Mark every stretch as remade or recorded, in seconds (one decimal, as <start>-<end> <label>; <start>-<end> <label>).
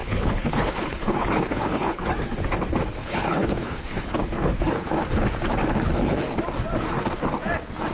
0.0-2.1 remade; 2.1-3.0 recorded; 3.0-4.9 remade; 4.9-7.9 recorded